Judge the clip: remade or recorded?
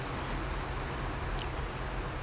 recorded